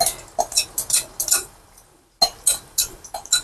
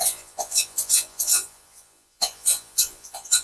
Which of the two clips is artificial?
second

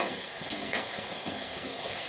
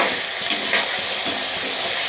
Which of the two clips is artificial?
first